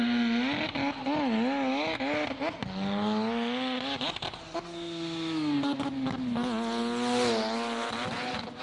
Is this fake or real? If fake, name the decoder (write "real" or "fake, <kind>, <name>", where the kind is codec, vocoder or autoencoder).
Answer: real